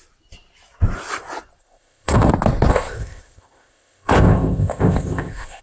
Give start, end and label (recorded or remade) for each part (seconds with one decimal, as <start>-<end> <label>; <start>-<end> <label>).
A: 0.0-1.6 recorded; 1.6-2.3 remade; 2.3-2.7 recorded; 2.7-5.6 remade